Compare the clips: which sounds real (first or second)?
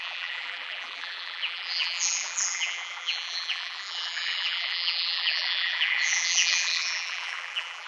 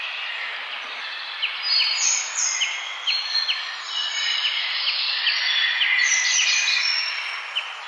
second